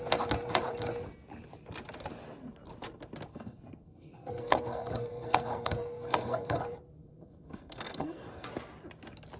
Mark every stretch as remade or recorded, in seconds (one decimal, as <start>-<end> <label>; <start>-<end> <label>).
0.0-3.3 recorded; 3.3-6.6 remade; 6.6-7.0 recorded; 7.0-8.5 remade; 8.5-9.4 recorded